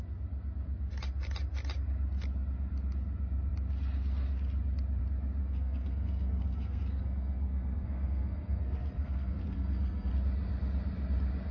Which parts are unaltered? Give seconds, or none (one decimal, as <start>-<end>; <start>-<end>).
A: 0.0-5.4; 10.1-11.5